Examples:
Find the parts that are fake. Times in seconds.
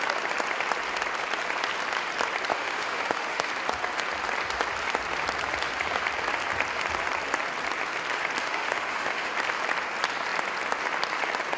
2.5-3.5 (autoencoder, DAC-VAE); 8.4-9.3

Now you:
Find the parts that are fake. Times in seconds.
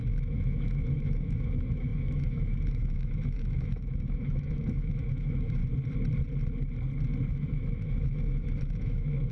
0.0-5.6 (autoencoder, DAC-VAE); 7.3-9.3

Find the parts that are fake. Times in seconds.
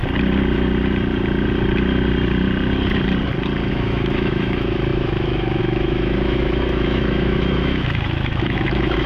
3.7-9.1 (autoencoder, DAC-VAE)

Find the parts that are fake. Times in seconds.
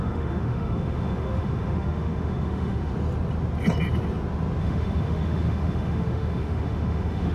0.0-2.9 (autoencoder, DAC-VAE); 4.6-7.3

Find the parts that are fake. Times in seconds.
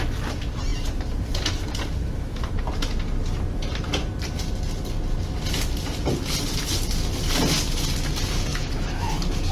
2.0-2.5 (autoencoder, DAC-VAE); 8.5-9.1